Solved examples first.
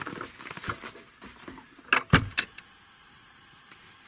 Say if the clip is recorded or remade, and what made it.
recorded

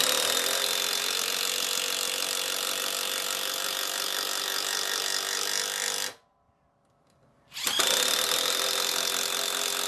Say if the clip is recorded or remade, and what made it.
recorded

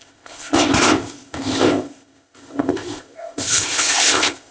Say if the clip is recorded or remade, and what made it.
remade, codec, ZipCodec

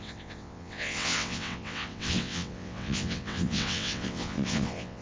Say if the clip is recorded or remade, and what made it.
remade, vocoder, WaveNeXt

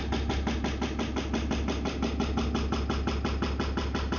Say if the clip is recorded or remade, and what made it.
recorded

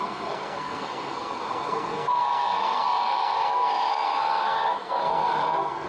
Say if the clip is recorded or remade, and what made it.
remade, codec, SNAC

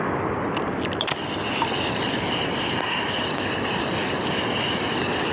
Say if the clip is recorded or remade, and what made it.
recorded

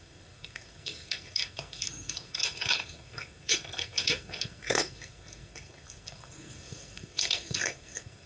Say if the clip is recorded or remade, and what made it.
remade, codec, SNAC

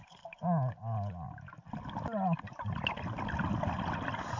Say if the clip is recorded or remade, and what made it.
recorded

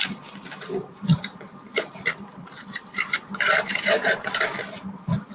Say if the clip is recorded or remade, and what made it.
remade, vocoder, BigVGAN v2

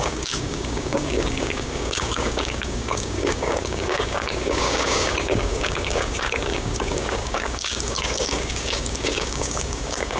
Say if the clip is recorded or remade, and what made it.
remade, codec, DAC